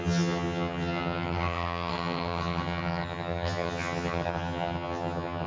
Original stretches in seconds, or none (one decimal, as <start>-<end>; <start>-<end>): none